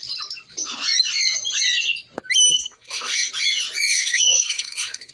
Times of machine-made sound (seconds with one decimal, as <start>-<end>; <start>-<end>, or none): 2.5-3.3; 3.9-5.1